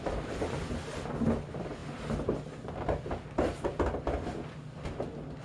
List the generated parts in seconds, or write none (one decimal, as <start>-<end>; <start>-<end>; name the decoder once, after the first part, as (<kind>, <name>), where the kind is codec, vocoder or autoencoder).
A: none